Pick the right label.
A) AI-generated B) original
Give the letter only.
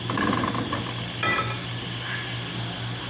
B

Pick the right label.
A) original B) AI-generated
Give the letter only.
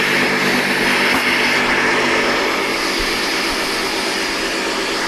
A